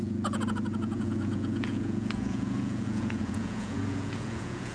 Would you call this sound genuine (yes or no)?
no